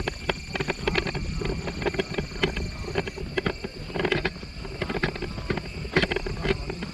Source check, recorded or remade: recorded